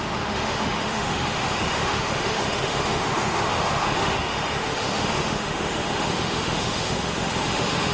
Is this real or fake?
fake